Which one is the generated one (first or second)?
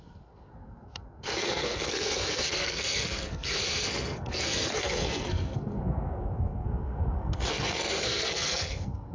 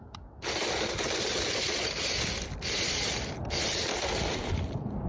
first